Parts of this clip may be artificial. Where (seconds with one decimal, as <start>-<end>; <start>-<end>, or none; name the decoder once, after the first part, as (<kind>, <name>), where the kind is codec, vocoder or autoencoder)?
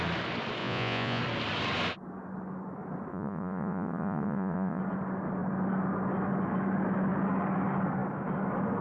0.6-1.2 (vocoder, Vocos); 3.1-4.8